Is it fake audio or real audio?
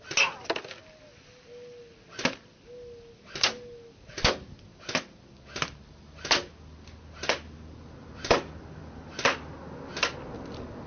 real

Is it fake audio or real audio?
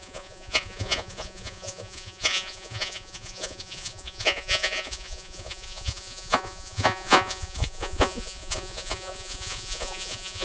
fake